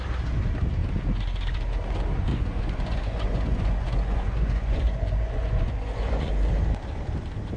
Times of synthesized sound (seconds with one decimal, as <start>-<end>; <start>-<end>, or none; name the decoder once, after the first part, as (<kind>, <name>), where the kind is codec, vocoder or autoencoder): 2.3-6.3 (vocoder, Vocos)